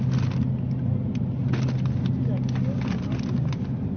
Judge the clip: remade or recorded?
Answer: recorded